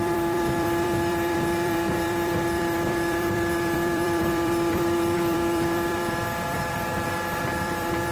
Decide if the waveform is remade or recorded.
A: remade